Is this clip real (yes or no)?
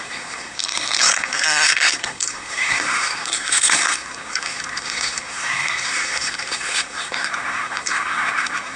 no